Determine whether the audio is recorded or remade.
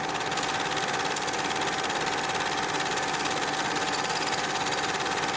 recorded